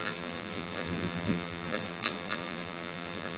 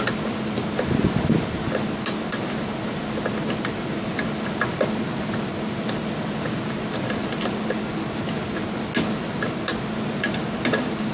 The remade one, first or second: first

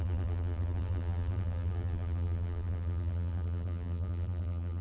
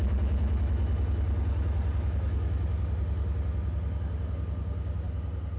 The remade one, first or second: first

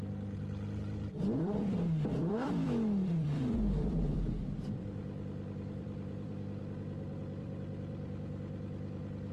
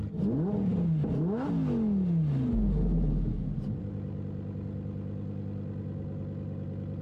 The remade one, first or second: first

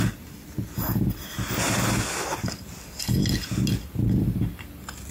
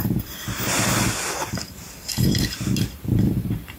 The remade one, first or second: second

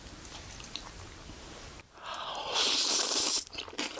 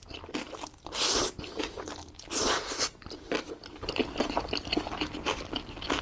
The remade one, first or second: first